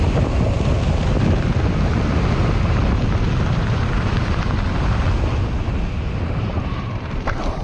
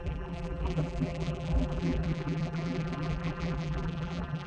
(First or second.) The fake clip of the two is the second